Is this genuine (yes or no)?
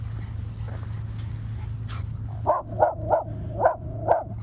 yes